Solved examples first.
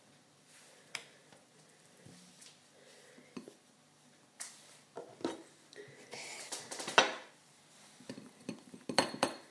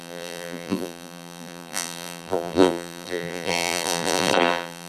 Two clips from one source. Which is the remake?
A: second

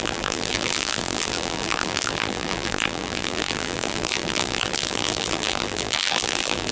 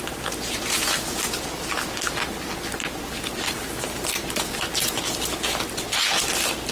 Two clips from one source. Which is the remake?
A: first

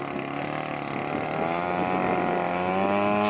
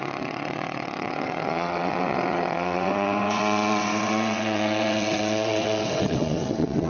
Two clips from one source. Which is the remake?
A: second